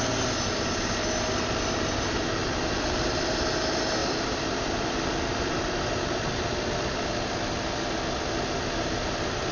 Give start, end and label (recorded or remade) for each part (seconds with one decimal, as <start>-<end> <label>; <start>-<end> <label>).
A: 0.0-2.4 recorded; 2.4-3.3 remade; 3.3-9.5 recorded